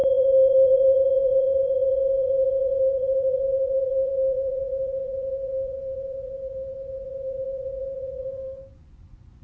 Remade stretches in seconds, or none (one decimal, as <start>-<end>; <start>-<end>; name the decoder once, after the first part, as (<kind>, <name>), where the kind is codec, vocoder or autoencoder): 0.0-9.4 (vocoder, Vocos)